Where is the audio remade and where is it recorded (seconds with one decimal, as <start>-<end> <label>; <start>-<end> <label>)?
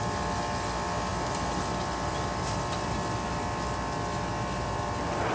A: 0.0-5.3 recorded